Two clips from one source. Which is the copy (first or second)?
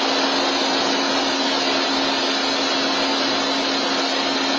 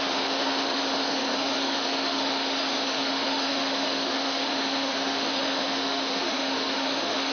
second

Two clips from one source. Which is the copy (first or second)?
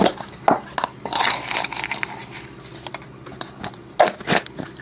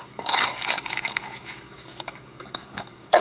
second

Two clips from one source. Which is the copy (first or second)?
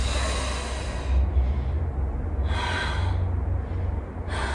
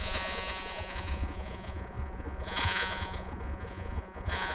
second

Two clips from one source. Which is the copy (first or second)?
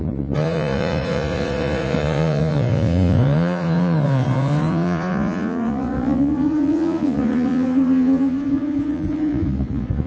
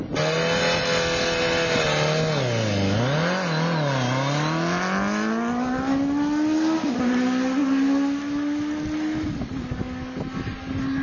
first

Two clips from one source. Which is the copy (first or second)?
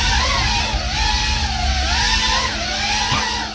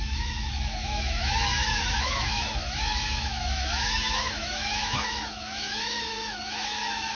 second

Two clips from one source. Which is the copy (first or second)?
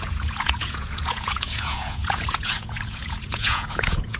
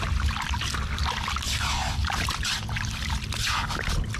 first